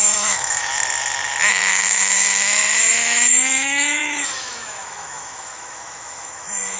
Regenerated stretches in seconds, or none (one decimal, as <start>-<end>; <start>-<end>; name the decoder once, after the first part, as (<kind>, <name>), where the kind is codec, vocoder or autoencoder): 0.0-0.7 (autoencoder, DAC-VAE); 1.5-6.8